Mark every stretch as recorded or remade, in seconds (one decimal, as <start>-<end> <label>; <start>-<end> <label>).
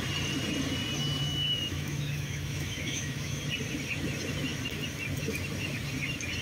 0.0-1.2 recorded; 1.2-3.4 remade; 3.4-6.4 recorded